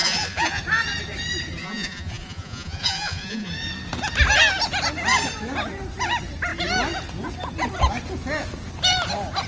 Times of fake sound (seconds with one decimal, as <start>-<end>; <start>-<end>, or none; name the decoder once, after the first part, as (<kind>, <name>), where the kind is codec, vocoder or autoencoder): 0.0-0.6 (vocoder, Vocos); 1.6-3.5